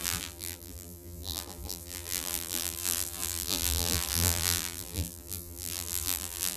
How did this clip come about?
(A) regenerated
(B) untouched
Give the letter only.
A